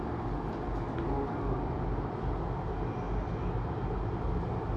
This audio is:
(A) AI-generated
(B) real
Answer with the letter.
B